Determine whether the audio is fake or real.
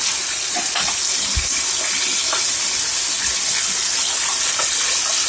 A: real